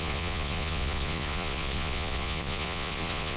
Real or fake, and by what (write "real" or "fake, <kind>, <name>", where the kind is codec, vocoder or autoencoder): fake, vocoder, Vocos